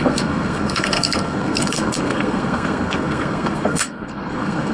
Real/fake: fake